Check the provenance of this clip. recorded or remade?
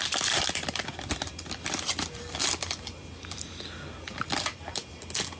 recorded